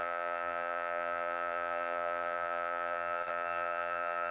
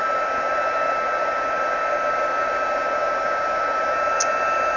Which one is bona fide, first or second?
second